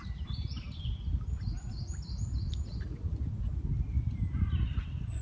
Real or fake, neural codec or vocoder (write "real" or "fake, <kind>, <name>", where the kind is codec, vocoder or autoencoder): real